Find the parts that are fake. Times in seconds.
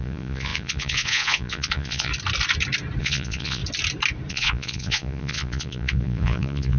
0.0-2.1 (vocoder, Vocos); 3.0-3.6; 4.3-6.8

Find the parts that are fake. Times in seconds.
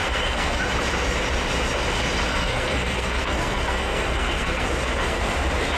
0.0-0.6 (codec, SNAC); 2.3-5.2